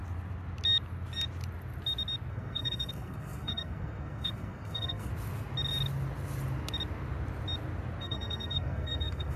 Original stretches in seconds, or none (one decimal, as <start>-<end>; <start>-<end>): 0.0-2.3; 5.1-8.0

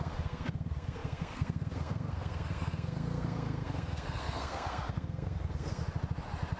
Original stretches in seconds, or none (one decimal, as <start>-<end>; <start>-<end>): 5.8-6.6

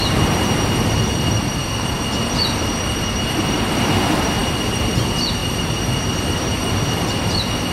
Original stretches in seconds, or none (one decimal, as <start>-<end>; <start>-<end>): 0.0-7.7

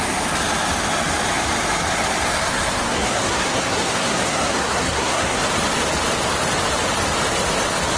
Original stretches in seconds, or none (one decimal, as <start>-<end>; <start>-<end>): 0.0-2.3; 5.4-8.0

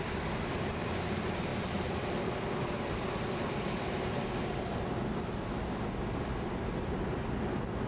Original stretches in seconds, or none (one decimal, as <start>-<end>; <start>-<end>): 0.0-7.9

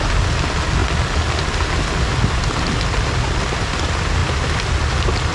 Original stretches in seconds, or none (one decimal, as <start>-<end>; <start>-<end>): 0.0-5.3

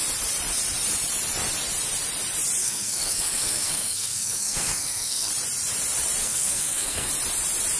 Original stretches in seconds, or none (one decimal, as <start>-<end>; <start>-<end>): 0.0-2.6; 5.3-6.2; 7.1-7.8